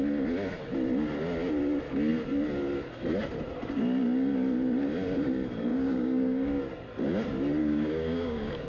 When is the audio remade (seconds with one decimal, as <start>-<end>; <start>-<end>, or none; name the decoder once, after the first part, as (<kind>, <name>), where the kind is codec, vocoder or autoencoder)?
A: 5.7-6.6 (codec, DAC); 7.6-8.7